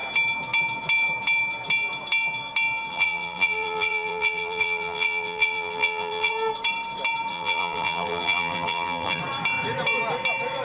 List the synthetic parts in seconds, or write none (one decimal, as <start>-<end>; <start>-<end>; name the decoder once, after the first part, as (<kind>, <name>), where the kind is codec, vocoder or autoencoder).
2.9-6.3 (vocoder, BigVGAN v2); 7.3-9.2